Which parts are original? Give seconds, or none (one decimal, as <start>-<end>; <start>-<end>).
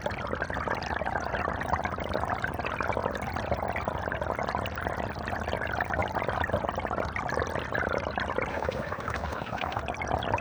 0.0-8.5; 9.8-10.4